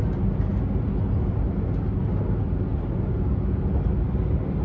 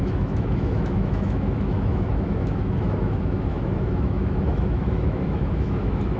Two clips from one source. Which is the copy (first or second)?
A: second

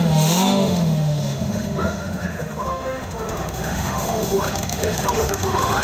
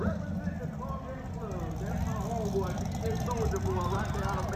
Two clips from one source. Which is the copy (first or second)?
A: first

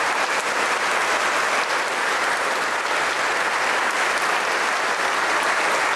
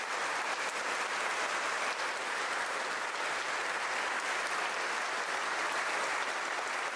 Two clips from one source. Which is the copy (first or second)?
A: second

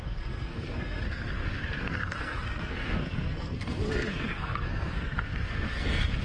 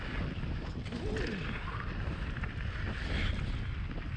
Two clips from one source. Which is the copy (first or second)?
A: first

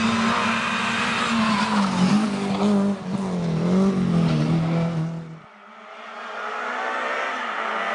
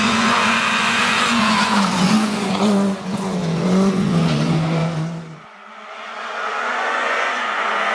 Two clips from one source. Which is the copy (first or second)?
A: second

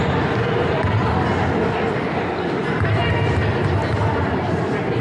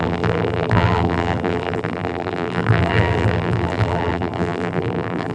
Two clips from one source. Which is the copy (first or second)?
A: second